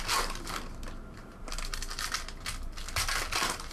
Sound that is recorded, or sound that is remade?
recorded